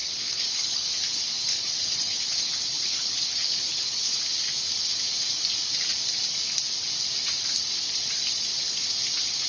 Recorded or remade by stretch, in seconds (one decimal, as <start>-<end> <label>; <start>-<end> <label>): 0.0-4.2 remade; 4.2-9.5 recorded